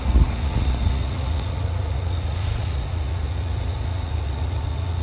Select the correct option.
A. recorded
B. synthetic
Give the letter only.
B